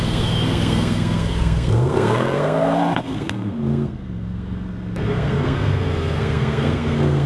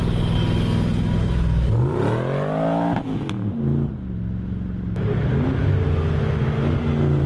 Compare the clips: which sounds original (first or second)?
second